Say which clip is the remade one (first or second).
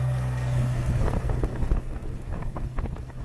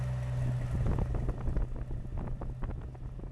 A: first